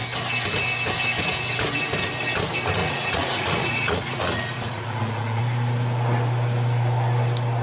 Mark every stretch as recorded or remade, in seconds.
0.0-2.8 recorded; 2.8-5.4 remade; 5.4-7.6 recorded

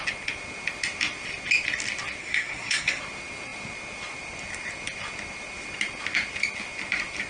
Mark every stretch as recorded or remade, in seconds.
0.0-2.2 recorded; 2.2-3.0 remade; 3.0-7.3 recorded

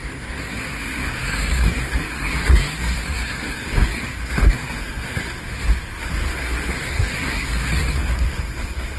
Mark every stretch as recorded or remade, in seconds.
0.0-5.4 remade; 5.4-6.0 recorded; 6.0-9.0 remade

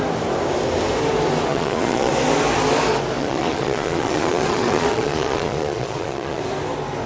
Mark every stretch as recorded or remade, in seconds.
0.0-1.5 recorded; 1.5-2.1 remade; 2.1-3.2 recorded; 3.2-6.4 remade; 6.4-7.1 recorded

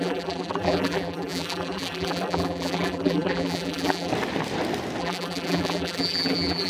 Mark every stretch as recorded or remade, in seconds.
0.0-4.1 remade; 4.1-5.0 recorded; 5.0-6.7 remade

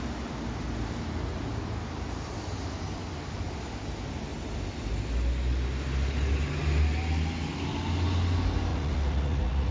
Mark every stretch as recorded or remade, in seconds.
0.0-8.7 recorded; 8.7-9.7 remade